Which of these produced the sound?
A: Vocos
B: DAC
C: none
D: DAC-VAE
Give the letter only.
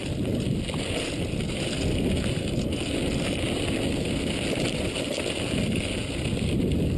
C